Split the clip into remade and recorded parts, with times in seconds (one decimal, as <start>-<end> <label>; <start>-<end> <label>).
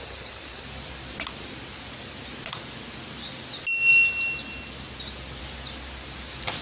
0.0-6.6 recorded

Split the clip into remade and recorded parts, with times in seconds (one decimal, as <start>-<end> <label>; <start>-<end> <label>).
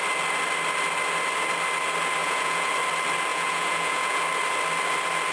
0.0-2.2 recorded; 2.2-2.7 remade; 2.7-3.3 recorded; 3.3-4.2 remade; 4.2-5.3 recorded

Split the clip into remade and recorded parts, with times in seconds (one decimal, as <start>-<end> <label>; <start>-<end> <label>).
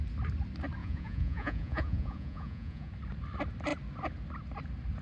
0.0-0.8 recorded; 0.8-2.9 remade; 2.9-5.0 recorded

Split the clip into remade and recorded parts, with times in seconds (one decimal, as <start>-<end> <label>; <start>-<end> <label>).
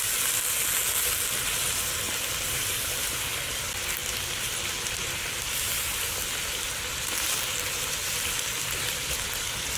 0.0-9.8 recorded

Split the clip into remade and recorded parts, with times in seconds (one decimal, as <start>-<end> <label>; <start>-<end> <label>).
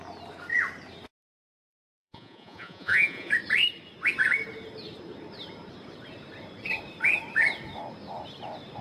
0.0-1.6 recorded; 1.6-3.3 remade; 3.3-8.8 recorded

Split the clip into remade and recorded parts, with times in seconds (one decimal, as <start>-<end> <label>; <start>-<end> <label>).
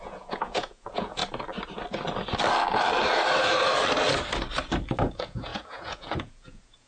0.0-1.2 remade; 1.2-5.1 recorded; 5.1-6.9 remade